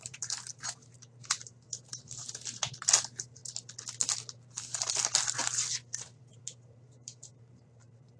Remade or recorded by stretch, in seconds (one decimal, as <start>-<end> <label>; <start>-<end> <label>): 0.0-3.4 remade; 3.4-6.3 recorded; 6.3-8.2 remade